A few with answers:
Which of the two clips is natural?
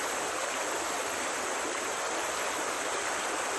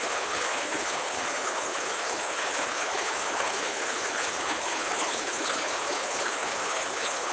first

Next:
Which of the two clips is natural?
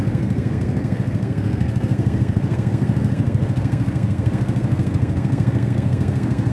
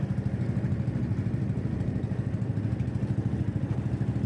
second